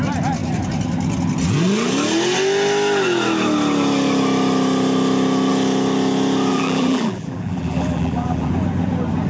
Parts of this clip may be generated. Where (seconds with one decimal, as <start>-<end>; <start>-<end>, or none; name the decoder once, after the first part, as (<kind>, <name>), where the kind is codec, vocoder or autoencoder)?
6.5-8.5 (vocoder, BigVGAN v2)